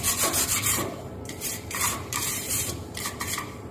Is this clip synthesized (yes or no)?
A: yes